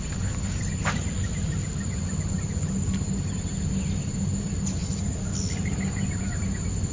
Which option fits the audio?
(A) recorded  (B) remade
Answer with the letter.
A